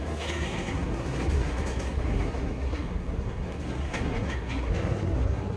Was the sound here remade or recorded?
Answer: remade